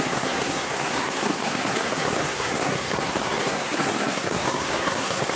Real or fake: fake